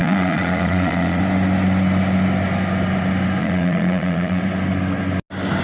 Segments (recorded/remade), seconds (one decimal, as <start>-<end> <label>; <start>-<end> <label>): 0.0-1.2 remade; 1.2-3.4 recorded; 3.4-4.4 remade; 4.4-5.6 recorded